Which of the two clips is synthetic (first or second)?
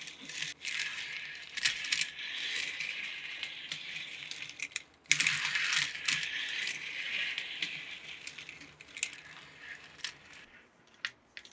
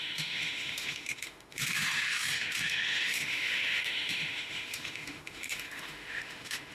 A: second